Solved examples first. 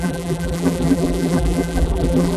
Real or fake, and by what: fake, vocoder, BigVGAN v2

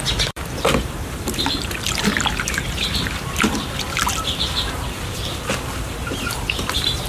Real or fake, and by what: fake, vocoder, BigVGAN v2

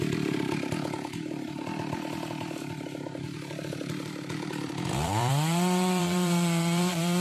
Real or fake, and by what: fake, vocoder, BigVGAN v2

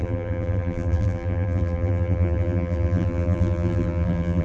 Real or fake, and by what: fake, vocoder, BigVGAN v2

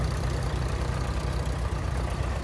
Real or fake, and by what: real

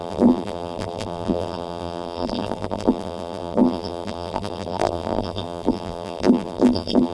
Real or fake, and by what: fake, vocoder, BigVGAN v2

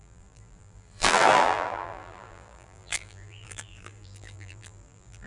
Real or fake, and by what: fake, vocoder, BigVGAN v2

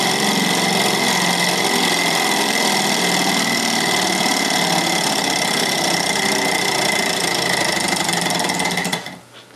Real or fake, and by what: fake, vocoder, BigVGAN v2